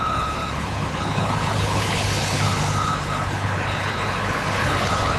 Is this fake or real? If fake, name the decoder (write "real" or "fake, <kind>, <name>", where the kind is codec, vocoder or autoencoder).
fake, codec, HILCodec